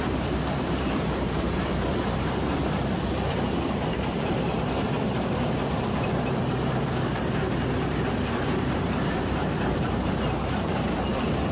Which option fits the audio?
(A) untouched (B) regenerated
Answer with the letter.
B